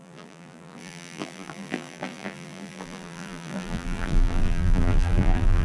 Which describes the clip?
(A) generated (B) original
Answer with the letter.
A